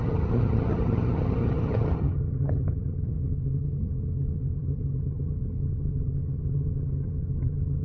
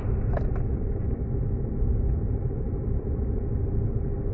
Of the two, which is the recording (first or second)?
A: second